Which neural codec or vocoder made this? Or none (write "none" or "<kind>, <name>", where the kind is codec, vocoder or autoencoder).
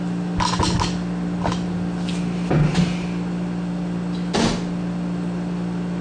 none